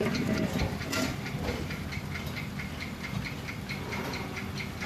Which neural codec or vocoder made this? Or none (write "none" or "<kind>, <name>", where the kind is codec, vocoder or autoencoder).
vocoder, BigVGAN v2